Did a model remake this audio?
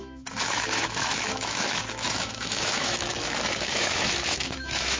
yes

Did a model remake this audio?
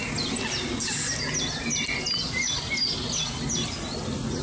no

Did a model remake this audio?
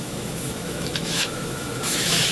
yes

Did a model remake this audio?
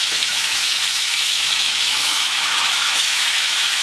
yes